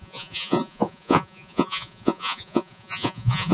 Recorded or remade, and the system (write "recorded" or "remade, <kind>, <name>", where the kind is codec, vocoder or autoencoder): remade, vocoder, Vocos